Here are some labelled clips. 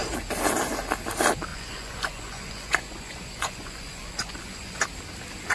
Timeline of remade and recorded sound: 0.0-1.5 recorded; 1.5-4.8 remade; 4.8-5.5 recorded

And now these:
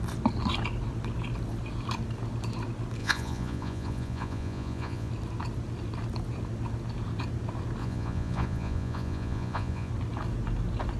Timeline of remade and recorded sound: 0.0-3.0 recorded; 3.0-5.1 remade; 5.1-7.8 recorded; 7.8-9.9 remade; 9.9-11.0 recorded

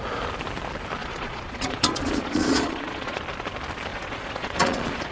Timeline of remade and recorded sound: 0.0-1.0 recorded; 1.0-3.2 remade; 3.2-3.9 recorded; 3.9-5.1 remade